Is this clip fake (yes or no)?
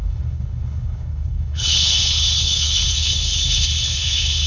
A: yes